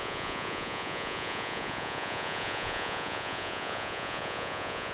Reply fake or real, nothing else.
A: fake